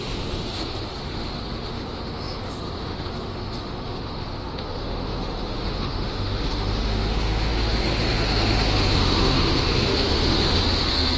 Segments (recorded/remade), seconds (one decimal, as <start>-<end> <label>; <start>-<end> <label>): 0.0-11.2 remade